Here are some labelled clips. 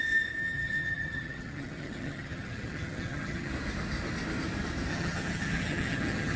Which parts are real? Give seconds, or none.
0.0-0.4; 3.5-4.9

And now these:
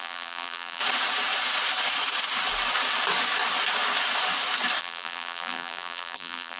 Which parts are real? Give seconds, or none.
0.8-4.8

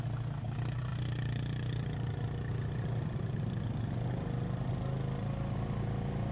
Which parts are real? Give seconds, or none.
0.0-6.3